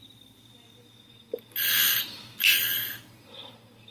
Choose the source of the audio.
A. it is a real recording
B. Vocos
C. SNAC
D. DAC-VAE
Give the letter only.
A